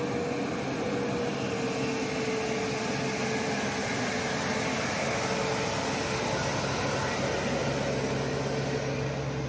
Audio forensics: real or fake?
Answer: real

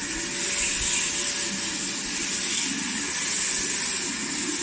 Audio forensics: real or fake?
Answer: real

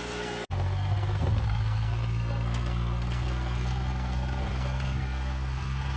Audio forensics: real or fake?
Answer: fake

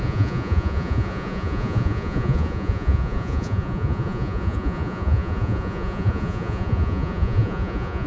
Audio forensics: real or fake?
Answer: fake